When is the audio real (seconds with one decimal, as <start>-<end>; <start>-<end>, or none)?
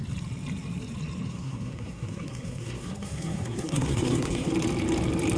0.0-1.3; 4.5-5.4